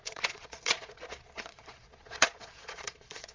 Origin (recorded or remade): remade